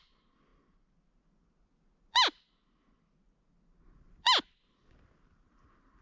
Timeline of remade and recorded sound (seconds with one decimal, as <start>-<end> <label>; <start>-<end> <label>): 0.0-6.0 recorded